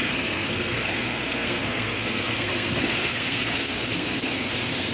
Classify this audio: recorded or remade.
remade